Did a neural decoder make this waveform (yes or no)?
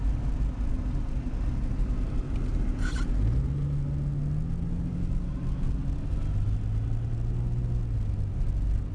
no